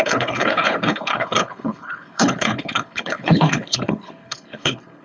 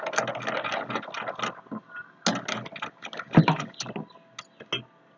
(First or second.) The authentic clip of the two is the second